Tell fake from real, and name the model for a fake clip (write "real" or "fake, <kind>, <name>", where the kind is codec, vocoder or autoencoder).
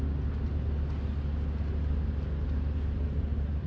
real